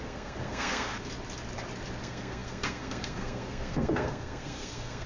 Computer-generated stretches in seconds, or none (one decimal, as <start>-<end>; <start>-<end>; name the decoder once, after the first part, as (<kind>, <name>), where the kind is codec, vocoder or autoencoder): 0.0-0.9 (codec, SNAC); 2.0-5.1